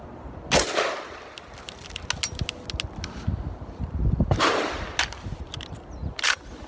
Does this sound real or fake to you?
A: real